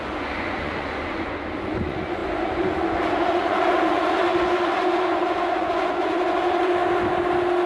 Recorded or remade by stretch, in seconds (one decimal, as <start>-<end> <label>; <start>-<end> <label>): 0.0-6.8 remade; 6.8-7.7 recorded